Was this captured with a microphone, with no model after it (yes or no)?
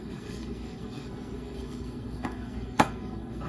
no